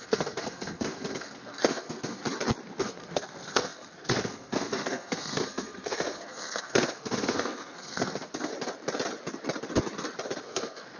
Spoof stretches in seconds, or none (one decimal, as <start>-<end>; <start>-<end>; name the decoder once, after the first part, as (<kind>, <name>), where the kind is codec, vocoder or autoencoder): 0.0-2.2 (codec, SNAC); 2.8-8.5; 10.4-11.0